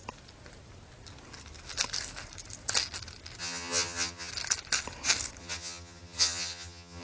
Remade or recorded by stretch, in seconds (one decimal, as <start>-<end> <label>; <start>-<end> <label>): 0.0-3.4 recorded; 3.4-4.3 remade; 4.3-5.4 recorded; 5.4-7.0 remade